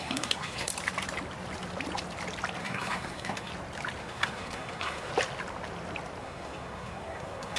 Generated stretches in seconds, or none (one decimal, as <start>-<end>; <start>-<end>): 0.0-0.7; 2.6-3.5; 4.0-5.1; 6.2-7.6